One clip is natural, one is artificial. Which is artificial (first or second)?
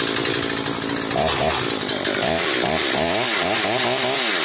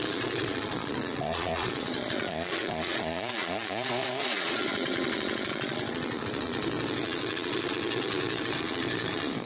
second